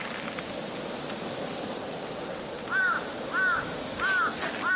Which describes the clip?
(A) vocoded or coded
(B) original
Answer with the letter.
B